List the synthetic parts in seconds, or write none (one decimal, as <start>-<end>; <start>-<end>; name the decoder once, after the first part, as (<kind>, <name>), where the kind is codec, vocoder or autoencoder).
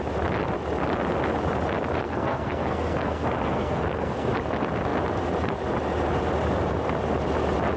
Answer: 2.0-4.3 (codec, SNAC)